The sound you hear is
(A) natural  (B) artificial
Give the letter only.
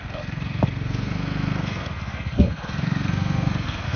B